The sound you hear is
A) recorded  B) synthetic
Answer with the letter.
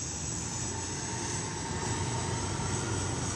A